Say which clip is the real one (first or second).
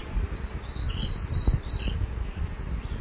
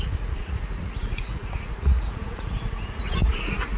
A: first